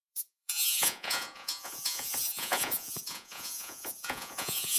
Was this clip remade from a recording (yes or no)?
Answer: yes